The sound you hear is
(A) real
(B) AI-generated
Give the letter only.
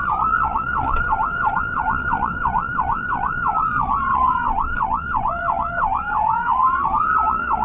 B